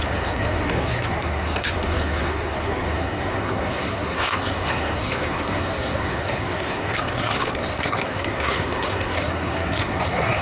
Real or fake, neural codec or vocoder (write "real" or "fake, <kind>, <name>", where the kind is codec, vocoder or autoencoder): fake, codec, SNAC